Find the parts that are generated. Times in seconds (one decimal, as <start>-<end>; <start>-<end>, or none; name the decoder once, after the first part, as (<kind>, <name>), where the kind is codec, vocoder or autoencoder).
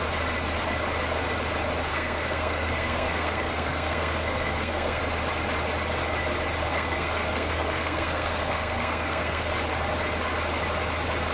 1.9-5.0 (codec, SNAC); 6.7-9.5